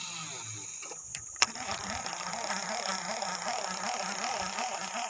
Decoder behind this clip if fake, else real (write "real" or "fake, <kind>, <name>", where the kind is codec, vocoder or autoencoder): real